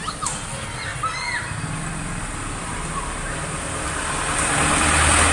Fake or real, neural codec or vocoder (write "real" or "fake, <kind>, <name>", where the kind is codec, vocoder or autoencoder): real